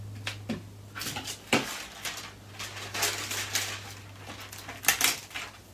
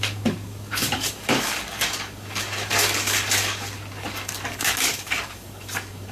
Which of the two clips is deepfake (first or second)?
second